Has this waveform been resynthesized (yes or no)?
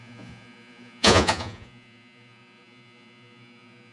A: yes